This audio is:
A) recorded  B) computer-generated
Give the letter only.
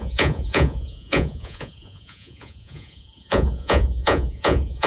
B